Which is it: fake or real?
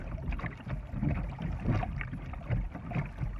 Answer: real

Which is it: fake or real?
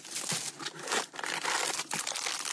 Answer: real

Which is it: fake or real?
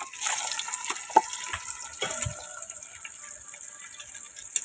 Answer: real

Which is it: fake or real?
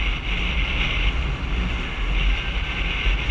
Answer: real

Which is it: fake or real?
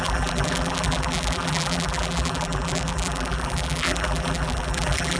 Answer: fake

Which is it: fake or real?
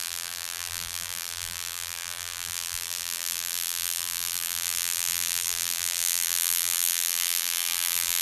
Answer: fake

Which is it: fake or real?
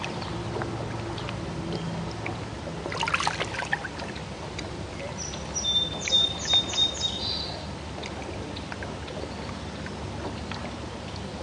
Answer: fake